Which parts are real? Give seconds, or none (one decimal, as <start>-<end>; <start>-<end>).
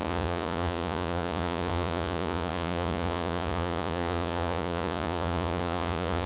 none